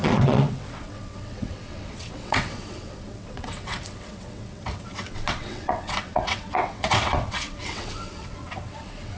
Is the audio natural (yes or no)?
no